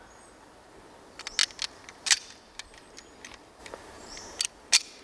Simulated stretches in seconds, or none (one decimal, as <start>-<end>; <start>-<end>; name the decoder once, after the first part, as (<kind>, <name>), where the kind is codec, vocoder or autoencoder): 3.6-4.4 (vocoder, BigVGAN v2)